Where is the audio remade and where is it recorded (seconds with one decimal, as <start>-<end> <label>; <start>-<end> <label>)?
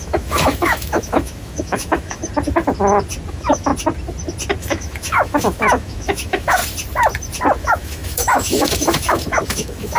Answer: 0.0-2.2 remade; 2.2-3.3 recorded; 3.3-3.7 remade; 3.7-4.6 recorded; 4.6-6.6 remade; 6.6-7.6 recorded; 7.6-10.0 remade